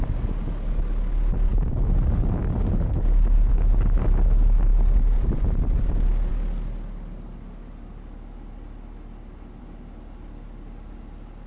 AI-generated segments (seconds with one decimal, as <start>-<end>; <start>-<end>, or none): none